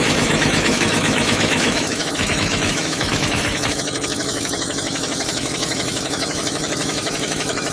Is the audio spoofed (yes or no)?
yes